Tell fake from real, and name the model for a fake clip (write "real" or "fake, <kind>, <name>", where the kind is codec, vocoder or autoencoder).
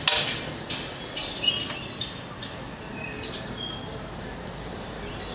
real